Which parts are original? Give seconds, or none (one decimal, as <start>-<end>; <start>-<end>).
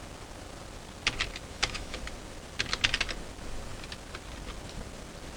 0.0-1.5; 2.0-5.4